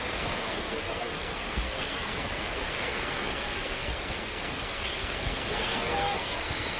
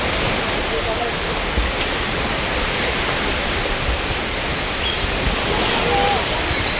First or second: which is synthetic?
first